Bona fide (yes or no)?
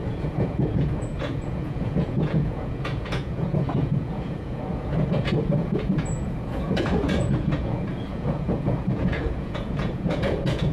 no